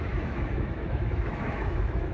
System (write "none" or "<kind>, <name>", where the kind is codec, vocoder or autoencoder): autoencoder, DAC-VAE